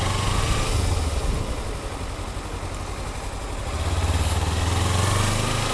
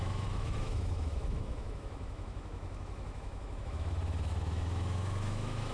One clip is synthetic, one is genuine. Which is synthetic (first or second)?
second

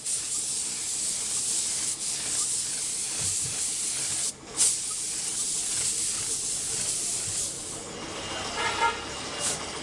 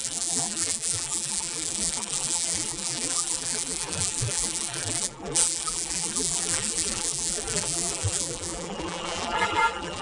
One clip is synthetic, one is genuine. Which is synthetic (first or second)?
second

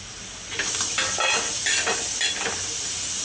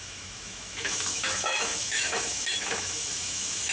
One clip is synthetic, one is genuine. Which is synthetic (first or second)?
second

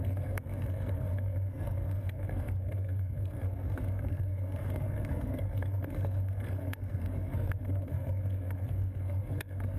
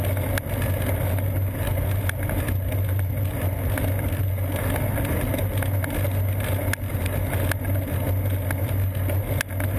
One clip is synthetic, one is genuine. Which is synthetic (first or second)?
first